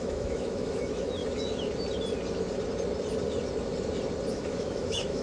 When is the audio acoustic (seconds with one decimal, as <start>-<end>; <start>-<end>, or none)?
1.2-4.3